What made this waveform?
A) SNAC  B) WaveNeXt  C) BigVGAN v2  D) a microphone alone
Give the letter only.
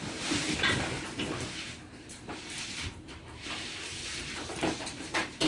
C